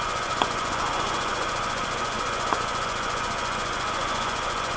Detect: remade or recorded remade